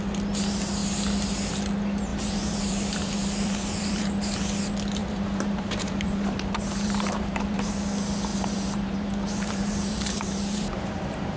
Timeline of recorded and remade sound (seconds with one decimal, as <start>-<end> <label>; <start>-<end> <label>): 0.0-2.1 recorded; 2.1-4.4 remade; 4.4-5.0 recorded; 5.0-7.7 remade; 7.7-8.3 recorded; 8.3-11.4 remade